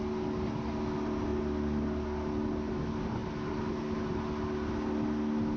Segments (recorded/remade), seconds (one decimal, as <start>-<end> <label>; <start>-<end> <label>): 0.0-5.6 recorded